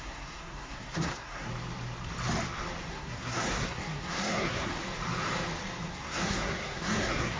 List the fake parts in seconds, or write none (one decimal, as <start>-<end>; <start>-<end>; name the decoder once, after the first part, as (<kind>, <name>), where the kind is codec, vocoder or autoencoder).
0.0-1.5 (codec, SNAC); 2.9-4.8; 5.9-7.4